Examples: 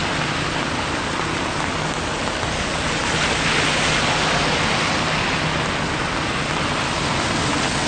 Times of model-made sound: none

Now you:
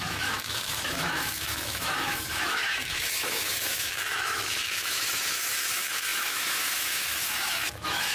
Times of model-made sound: 0.0-8.1 (autoencoder, DAC-VAE)